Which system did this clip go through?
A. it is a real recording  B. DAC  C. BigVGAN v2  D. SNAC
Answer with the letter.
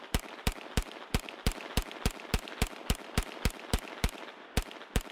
C